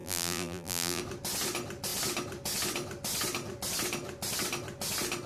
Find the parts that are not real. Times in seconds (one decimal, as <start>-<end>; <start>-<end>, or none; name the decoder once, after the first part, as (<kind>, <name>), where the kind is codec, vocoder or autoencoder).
0.0-1.0 (vocoder, BigVGAN v2)

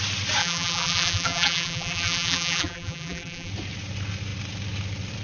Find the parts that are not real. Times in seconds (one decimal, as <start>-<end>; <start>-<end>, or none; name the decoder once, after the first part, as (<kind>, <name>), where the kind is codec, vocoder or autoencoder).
0.4-3.5 (vocoder, BigVGAN v2)

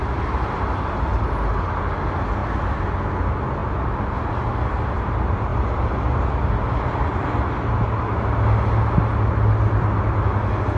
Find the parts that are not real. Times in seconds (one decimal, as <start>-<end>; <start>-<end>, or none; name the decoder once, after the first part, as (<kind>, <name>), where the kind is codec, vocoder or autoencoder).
none

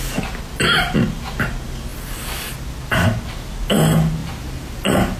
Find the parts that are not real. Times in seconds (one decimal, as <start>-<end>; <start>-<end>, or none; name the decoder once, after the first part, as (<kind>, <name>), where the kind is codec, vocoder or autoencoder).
4.2-5.2 (vocoder, BigVGAN v2)

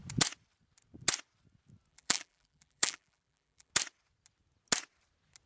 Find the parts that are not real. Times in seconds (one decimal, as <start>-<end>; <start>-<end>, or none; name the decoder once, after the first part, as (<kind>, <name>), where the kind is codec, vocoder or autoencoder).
1.9-3.7 (vocoder, BigVGAN v2)

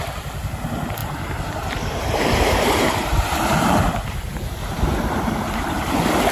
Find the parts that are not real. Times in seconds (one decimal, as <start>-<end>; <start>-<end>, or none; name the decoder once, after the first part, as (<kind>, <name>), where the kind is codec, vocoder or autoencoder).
1.0-4.8 (vocoder, BigVGAN v2)

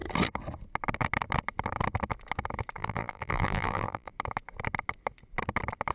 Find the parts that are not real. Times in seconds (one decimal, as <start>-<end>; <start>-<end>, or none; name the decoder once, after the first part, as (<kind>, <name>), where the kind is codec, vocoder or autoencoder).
2.8-4.1 (vocoder, BigVGAN v2)

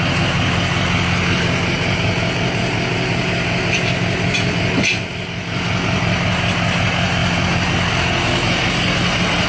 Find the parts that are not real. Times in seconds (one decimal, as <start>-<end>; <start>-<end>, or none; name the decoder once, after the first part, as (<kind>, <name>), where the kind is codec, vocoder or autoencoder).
none